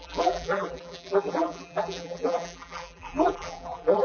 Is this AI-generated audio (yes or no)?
yes